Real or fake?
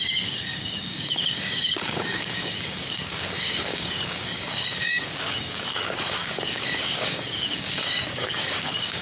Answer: fake